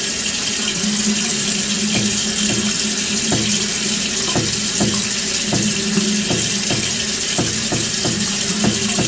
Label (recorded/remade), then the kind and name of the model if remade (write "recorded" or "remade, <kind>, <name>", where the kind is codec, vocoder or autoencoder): recorded